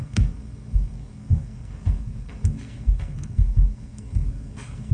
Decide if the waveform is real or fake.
fake